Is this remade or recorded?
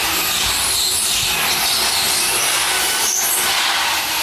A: recorded